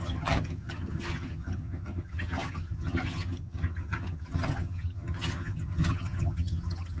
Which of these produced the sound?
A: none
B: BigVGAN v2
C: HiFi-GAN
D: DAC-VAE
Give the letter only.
C